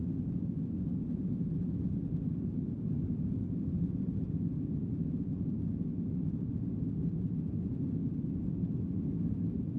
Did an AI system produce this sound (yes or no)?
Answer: no